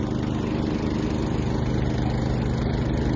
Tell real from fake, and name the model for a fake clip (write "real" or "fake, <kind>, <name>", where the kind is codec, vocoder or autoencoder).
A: real